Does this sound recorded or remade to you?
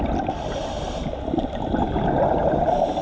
recorded